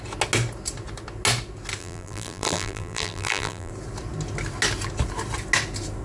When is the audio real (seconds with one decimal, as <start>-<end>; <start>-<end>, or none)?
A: 0.0-1.8; 3.7-6.0